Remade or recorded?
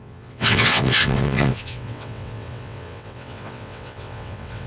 remade